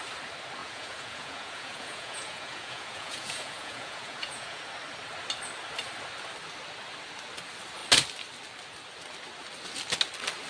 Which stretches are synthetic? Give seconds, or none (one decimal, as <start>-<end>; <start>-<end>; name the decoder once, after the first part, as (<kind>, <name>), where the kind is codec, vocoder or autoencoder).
0.6-4.6 (vocoder, Vocos)